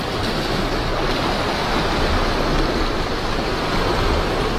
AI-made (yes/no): no